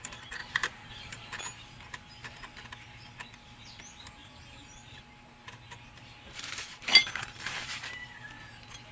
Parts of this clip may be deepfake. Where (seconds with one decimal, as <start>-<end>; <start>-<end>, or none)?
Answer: 0.4-1.4; 4.2-5.0; 6.9-8.3